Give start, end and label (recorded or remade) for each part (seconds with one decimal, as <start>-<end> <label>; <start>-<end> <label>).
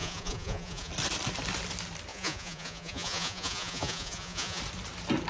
0.0-0.9 remade; 0.9-2.1 recorded; 2.1-4.6 remade; 4.6-5.3 recorded